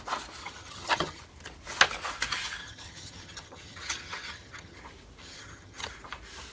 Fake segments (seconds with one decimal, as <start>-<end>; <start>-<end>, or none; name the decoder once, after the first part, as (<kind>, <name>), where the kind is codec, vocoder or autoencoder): 0.4-1.2 (vocoder, HiFi-GAN); 2.6-4.8; 5.2-5.9